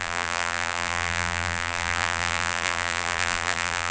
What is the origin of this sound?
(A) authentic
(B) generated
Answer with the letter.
B